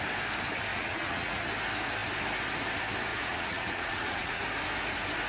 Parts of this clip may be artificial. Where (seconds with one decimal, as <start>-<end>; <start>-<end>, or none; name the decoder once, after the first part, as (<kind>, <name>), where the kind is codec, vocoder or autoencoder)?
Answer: 0.7-1.4 (vocoder, Vocos); 3.1-4.4